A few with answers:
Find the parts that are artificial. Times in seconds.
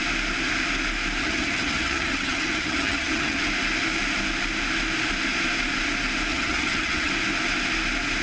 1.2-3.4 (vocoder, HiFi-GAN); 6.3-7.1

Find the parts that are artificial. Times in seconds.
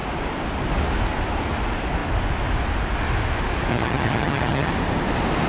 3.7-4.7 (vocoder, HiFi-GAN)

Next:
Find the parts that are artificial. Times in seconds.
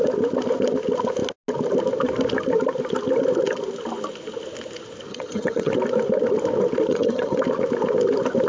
5.1-5.7 (vocoder, HiFi-GAN); 6.9-7.4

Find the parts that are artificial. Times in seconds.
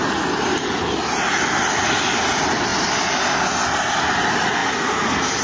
none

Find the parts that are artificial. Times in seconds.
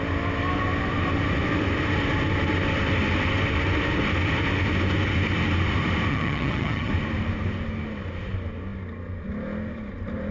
6.1-6.9 (vocoder, HiFi-GAN)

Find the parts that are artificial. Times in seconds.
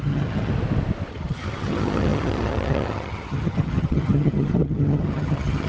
0.0-0.5 (vocoder, HiFi-GAN); 1.1-5.7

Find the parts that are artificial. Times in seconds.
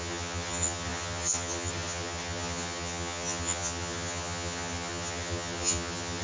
0.0-6.2 (vocoder, HiFi-GAN)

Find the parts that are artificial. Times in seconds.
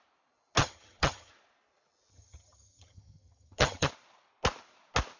0.6-1.3 (vocoder, HiFi-GAN); 2.1-3.9